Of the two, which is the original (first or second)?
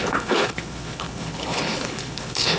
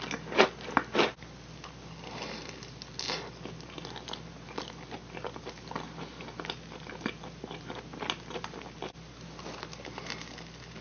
second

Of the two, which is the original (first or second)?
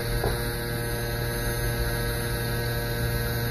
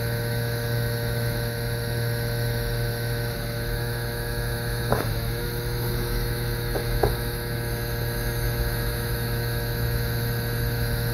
first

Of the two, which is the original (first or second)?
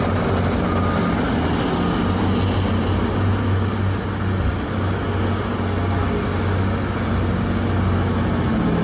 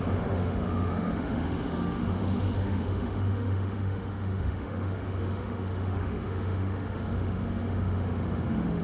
first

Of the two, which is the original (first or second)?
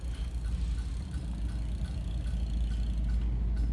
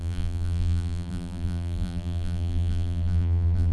first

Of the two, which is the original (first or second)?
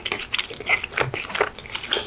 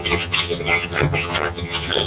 first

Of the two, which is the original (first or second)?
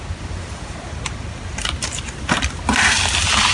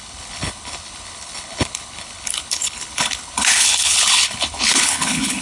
first